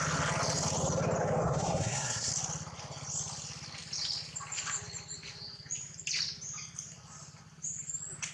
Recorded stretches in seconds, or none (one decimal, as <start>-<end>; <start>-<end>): 0.0-1.4; 2.3-8.3